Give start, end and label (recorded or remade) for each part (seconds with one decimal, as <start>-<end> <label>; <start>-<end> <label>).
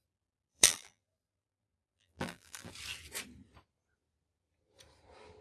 0.0-0.5 recorded; 0.5-2.7 remade; 2.7-5.4 recorded